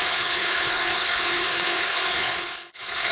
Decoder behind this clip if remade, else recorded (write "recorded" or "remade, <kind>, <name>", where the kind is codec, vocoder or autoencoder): remade, codec, HILCodec